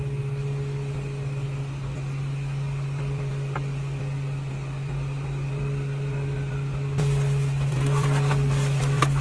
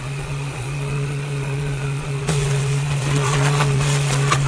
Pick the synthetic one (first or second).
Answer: second